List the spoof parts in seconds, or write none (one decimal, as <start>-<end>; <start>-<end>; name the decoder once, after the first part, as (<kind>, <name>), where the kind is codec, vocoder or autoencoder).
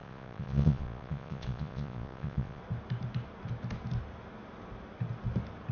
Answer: 0.0-2.6 (vocoder, Vocos)